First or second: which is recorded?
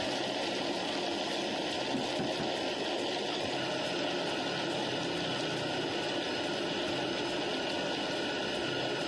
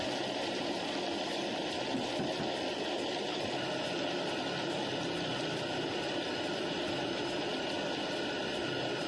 first